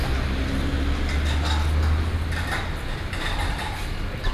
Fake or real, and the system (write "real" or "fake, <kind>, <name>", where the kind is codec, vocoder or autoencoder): real